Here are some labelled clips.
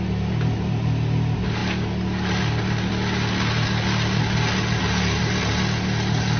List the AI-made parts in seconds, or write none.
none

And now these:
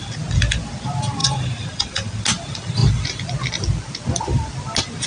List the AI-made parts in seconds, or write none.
1.2-2.2 (vocoder, BigVGAN v2)

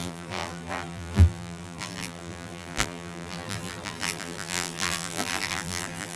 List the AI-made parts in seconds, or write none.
0.0-6.2 (vocoder, BigVGAN v2)

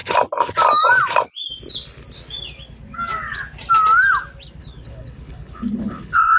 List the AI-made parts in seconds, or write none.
4.6-6.4 (codec, HILCodec)